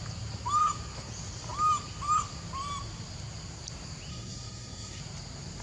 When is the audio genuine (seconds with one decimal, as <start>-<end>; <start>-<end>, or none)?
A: 0.0-4.1; 5.0-5.6